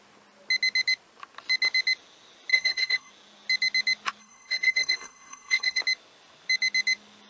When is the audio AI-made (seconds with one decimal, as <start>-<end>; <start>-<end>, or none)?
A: 2.5-3.1; 4.2-5.8